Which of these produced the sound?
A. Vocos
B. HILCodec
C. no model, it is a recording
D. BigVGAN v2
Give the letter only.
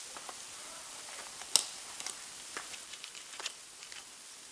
C